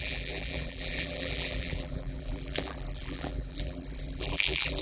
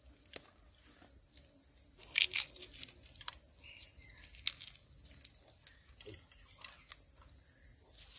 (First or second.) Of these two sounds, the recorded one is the second